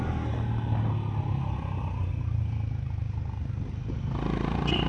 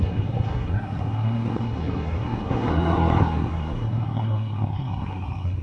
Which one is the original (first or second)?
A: first